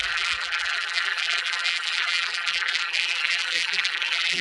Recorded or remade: remade